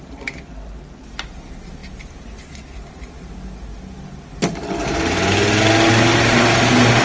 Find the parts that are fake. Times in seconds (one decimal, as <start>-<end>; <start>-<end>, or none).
1.8-2.9; 4.3-5.0